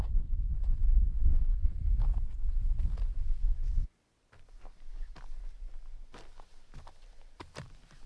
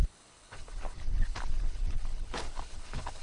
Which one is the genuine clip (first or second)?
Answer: first